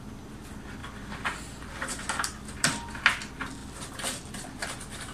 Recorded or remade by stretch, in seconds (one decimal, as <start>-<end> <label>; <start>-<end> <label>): 0.0-0.8 recorded; 0.8-2.9 remade; 2.9-3.6 recorded; 3.6-4.6 remade; 4.6-5.1 recorded